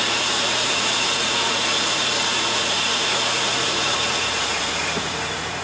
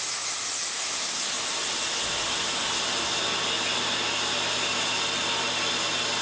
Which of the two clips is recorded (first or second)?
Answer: second